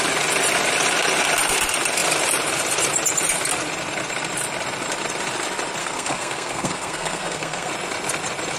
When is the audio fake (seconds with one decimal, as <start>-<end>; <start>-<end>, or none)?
5.8-7.7